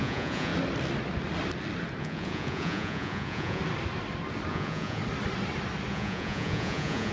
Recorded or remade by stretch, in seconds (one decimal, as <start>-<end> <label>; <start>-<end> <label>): 0.0-0.5 remade; 0.5-2.0 recorded; 2.0-3.6 remade; 3.6-4.5 recorded; 4.5-5.0 remade; 5.0-5.9 recorded; 5.9-7.1 remade